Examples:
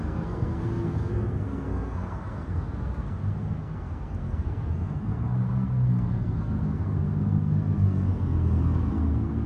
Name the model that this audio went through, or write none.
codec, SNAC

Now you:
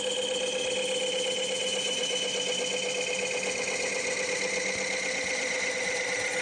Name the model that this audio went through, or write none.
none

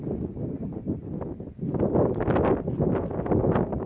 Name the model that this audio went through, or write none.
none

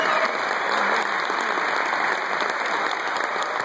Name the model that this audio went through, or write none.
none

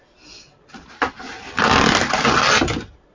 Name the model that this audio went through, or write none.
none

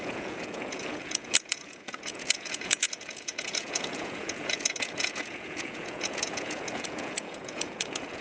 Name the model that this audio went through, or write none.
vocoder, Vocos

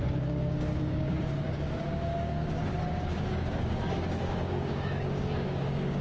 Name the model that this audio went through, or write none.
codec, DAC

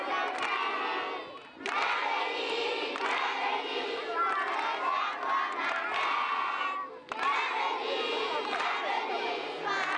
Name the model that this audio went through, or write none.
none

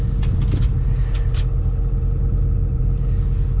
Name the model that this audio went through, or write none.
none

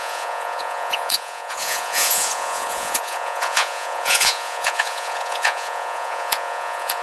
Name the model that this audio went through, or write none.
vocoder, Vocos